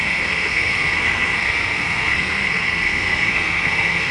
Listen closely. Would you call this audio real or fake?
fake